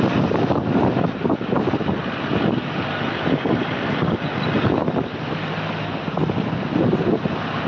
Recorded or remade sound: recorded